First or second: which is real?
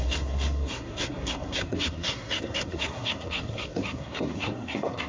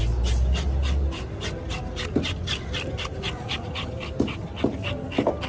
second